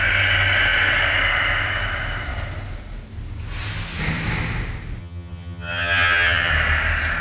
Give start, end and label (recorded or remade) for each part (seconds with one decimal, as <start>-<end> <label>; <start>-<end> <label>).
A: 0.0-5.0 recorded; 5.0-6.5 remade; 6.5-7.2 recorded